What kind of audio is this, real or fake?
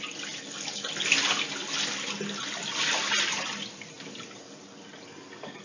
real